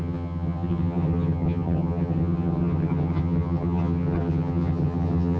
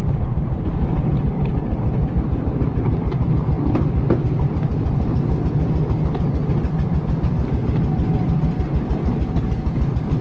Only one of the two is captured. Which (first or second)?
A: second